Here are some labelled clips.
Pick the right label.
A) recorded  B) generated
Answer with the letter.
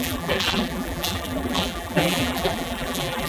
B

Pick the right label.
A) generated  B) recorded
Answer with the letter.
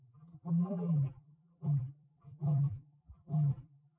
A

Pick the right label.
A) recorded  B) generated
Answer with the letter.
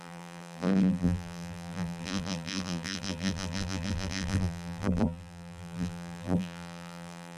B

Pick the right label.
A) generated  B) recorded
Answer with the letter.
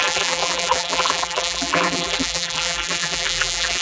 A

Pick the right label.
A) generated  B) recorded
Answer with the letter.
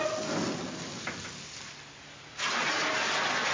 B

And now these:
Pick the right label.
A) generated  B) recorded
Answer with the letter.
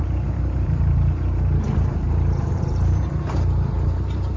A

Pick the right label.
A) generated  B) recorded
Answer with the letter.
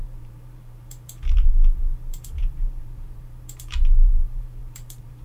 A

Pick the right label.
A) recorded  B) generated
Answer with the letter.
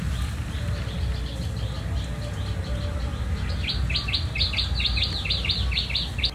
A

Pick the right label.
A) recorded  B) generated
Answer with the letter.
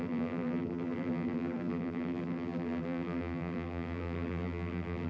B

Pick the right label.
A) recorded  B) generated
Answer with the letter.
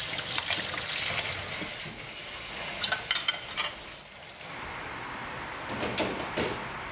A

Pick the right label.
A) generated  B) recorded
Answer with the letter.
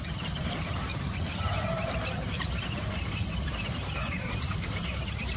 A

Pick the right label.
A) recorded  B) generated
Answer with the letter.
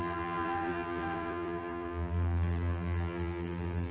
B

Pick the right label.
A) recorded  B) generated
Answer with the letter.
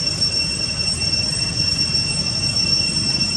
A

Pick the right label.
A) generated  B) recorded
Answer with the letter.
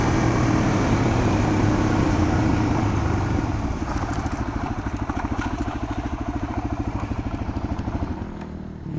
A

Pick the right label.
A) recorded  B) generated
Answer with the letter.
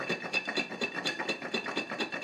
A